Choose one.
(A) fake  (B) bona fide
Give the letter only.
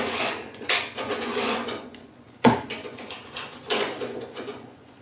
A